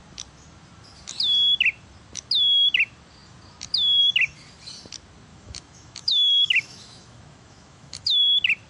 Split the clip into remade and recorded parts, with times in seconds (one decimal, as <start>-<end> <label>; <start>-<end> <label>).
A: 0.0-5.3 recorded; 5.3-8.2 remade; 8.2-8.7 recorded